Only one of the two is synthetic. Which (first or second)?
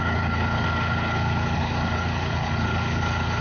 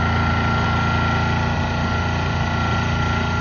first